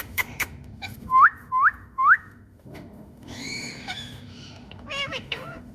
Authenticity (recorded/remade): remade